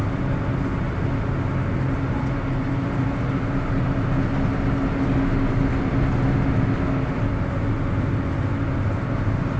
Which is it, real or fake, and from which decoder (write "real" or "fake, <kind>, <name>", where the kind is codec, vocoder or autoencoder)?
real